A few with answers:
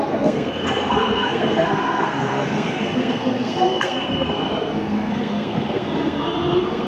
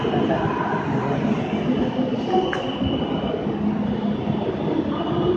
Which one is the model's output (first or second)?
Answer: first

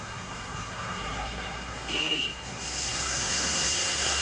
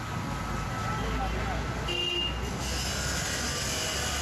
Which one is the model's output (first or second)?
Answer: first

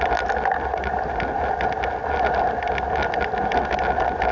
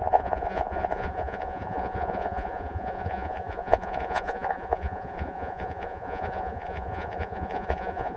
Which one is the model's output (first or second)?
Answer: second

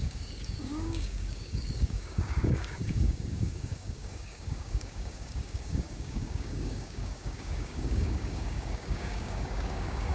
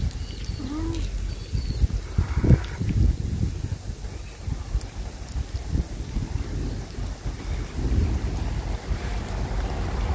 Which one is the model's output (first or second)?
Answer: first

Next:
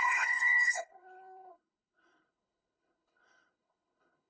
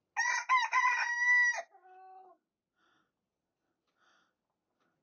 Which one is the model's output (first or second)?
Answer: first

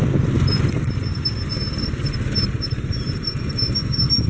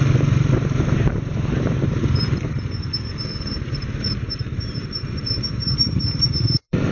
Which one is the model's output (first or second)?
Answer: second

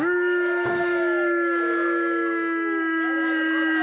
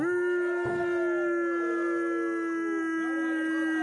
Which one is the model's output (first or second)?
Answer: first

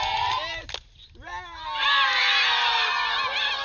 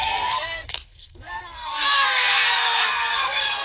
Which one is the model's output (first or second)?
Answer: second